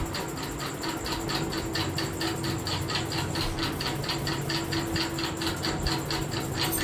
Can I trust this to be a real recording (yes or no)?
yes